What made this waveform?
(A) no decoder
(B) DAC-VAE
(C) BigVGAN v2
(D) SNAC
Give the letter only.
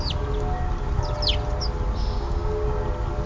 A